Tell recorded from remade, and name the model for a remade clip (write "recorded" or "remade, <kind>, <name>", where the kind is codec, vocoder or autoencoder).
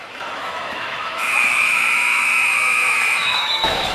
remade, autoencoder, DAC-VAE